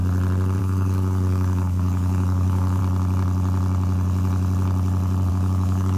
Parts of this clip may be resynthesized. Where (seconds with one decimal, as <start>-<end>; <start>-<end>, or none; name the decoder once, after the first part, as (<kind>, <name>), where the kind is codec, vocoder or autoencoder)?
0.6-2.8 (codec, DAC); 5.3-6.0